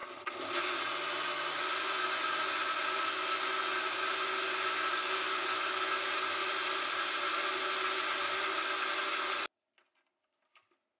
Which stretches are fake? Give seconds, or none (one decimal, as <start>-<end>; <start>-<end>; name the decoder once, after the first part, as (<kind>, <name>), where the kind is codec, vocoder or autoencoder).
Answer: none